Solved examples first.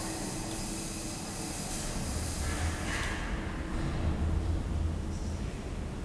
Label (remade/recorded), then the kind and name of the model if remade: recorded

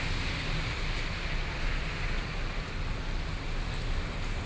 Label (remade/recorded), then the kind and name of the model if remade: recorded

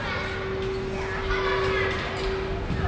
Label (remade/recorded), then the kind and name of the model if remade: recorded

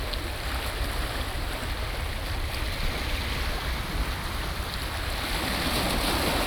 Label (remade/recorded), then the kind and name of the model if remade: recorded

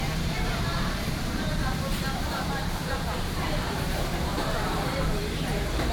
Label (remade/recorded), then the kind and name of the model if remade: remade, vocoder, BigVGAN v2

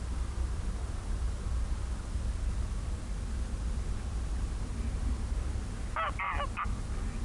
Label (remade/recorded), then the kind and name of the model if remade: recorded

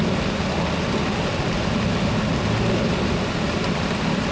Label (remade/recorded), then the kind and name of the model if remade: recorded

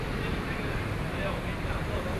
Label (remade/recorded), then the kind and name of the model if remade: recorded